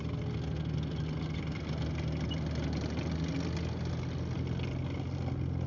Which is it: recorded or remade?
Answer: recorded